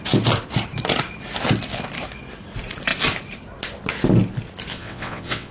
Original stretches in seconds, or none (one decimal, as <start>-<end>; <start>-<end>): 0.0-4.7